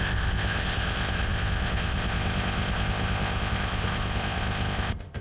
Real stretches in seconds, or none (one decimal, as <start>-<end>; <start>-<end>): none